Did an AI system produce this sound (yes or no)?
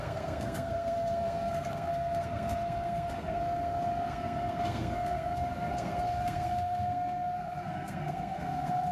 yes